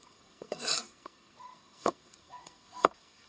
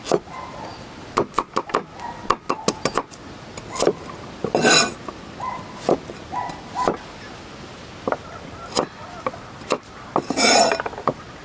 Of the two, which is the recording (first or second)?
second